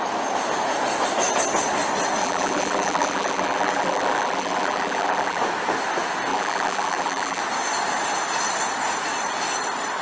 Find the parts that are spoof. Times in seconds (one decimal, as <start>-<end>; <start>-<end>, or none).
2.2-5.4; 6.3-7.4